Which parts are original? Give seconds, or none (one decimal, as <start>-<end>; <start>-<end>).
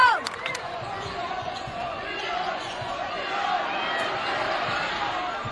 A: 3.3-5.5